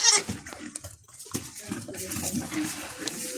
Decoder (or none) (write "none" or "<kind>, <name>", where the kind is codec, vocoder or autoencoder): none